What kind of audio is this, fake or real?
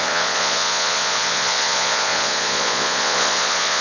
fake